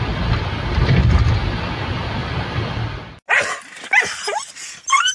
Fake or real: real